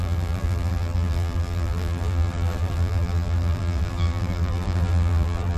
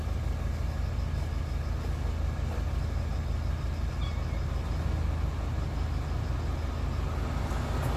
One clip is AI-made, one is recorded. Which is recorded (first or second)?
second